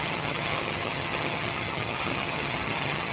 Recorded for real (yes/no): no